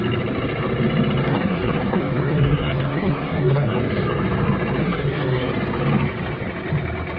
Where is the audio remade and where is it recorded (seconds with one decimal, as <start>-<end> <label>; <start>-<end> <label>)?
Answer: 0.0-1.3 recorded; 1.3-3.8 remade; 3.8-4.8 recorded; 4.8-5.5 remade; 5.5-7.2 recorded